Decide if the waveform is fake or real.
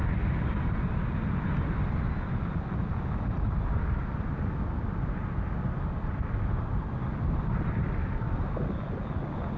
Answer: real